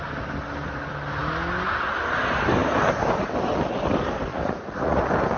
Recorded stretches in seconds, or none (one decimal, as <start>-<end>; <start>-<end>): 0.0-4.3; 5.0-5.4